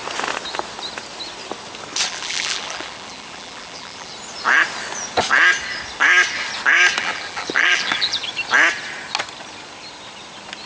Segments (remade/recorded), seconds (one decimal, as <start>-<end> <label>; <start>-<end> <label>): 0.0-2.1 recorded; 2.1-4.1 remade; 4.1-7.0 recorded; 7.0-8.2 remade; 8.2-10.7 recorded